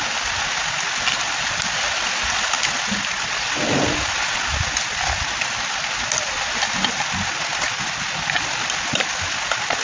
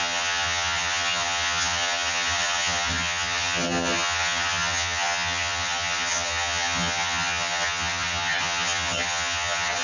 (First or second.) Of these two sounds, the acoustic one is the first